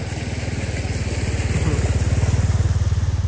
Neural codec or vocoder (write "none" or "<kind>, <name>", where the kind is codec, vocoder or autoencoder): none